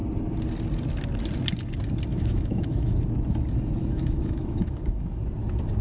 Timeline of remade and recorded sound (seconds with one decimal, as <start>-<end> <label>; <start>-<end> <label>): 0.0-2.1 recorded; 2.1-2.9 remade; 2.9-3.8 recorded; 3.8-5.2 remade; 5.2-5.8 recorded